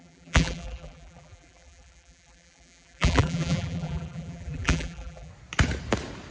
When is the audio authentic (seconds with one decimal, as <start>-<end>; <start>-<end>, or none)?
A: 5.3-6.3